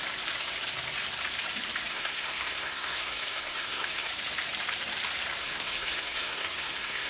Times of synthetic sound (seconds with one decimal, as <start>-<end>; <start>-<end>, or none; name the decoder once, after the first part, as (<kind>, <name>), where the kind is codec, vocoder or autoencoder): 1.9-4.1 (codec, SNAC); 5.4-7.1